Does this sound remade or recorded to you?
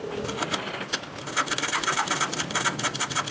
recorded